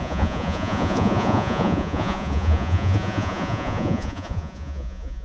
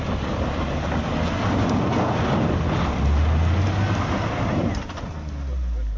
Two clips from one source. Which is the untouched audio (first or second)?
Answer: second